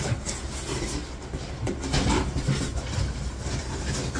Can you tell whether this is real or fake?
real